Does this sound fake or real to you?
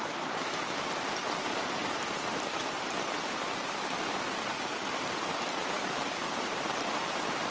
fake